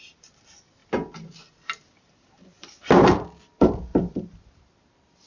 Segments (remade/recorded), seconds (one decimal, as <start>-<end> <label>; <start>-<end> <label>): 0.0-0.8 remade; 0.8-2.0 recorded; 2.0-5.3 remade